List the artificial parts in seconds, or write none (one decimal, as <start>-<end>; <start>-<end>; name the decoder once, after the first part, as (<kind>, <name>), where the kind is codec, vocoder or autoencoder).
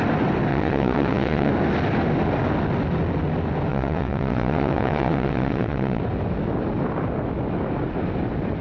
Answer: 0.5-1.5 (vocoder, WaveNeXt); 3.7-6.0